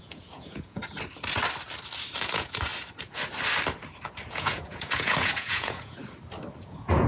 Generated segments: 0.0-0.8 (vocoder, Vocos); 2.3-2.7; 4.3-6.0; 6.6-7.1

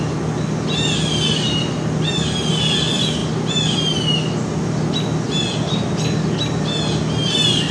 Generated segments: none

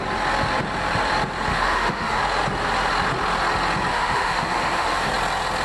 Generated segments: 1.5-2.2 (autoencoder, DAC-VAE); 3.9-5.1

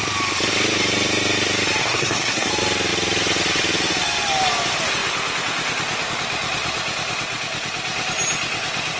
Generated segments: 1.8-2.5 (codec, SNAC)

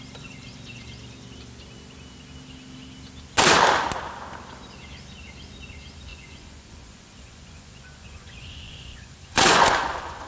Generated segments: 6.1-10.3 (vocoder, Vocos)